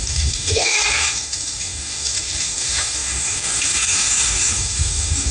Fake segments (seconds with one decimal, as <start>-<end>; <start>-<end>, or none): 0.0-5.3